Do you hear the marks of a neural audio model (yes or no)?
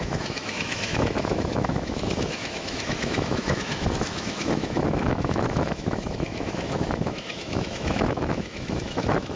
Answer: yes